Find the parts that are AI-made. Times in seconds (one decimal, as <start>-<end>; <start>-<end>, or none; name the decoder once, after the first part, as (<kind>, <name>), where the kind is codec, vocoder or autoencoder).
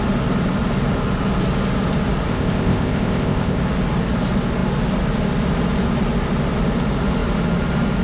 2.3-3.6 (codec, ZipCodec)